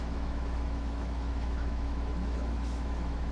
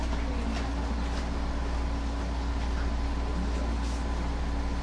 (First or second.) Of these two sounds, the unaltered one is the second